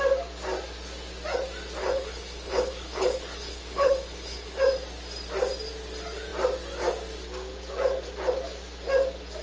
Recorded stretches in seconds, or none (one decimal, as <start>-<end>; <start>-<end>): 0.0-1.8; 4.6-9.4